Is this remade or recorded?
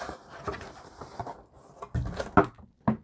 recorded